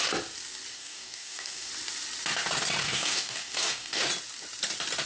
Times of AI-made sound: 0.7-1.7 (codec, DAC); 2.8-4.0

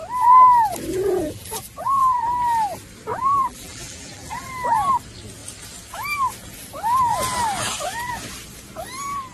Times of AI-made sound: 0.9-2.2 (vocoder, BigVGAN v2); 3.1-4.5